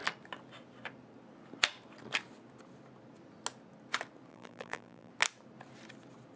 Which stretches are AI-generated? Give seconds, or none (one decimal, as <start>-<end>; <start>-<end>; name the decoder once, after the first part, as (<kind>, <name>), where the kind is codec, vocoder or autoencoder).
4.3-5.1 (vocoder, BigVGAN v2)